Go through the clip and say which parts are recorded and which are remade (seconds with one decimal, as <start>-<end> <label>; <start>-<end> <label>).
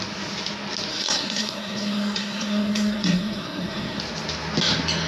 0.0-0.9 recorded; 0.9-4.0 remade; 4.0-5.1 recorded